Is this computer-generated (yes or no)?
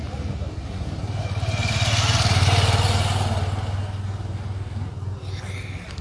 no